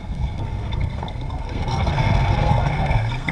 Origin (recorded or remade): remade